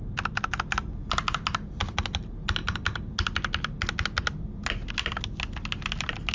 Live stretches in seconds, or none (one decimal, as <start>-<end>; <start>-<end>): 0.0-6.3